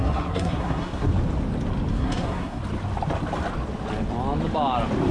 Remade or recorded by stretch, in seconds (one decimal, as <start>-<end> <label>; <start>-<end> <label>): 0.0-1.1 remade; 1.1-1.9 recorded; 1.9-2.6 remade; 2.6-5.1 recorded